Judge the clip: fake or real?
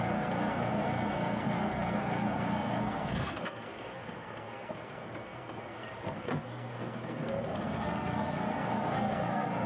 fake